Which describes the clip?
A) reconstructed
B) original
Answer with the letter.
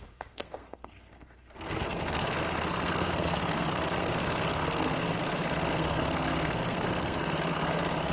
A